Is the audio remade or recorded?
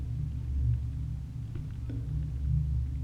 recorded